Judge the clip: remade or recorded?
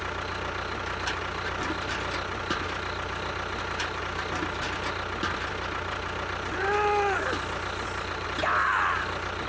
recorded